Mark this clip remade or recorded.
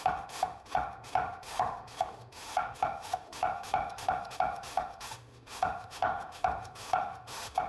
remade